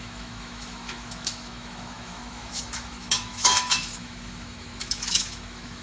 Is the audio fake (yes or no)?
yes